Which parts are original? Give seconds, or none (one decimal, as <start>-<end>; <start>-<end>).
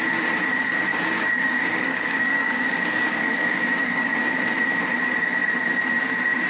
0.0-0.9; 4.4-6.5